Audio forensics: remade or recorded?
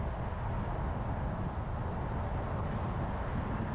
recorded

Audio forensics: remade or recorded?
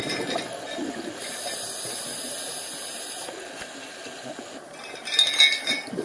recorded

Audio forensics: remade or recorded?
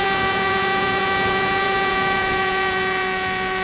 remade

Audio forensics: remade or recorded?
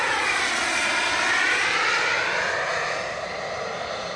recorded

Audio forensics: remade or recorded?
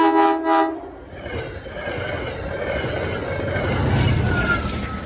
recorded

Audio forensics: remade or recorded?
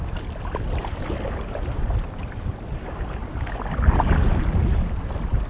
recorded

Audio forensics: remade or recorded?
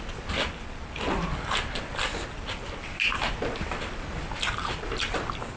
recorded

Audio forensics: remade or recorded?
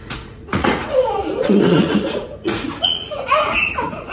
remade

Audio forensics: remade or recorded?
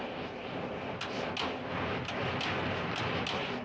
recorded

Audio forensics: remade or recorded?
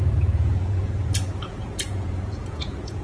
remade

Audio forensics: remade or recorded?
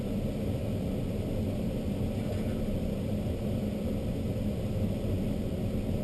recorded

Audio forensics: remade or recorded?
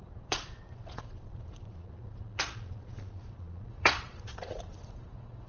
remade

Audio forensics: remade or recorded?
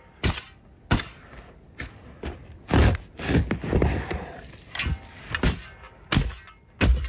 recorded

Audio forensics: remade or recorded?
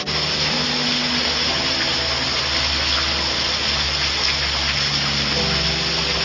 recorded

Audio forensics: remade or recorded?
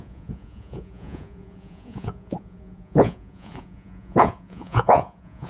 remade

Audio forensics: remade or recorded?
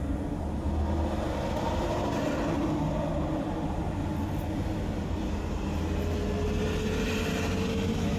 recorded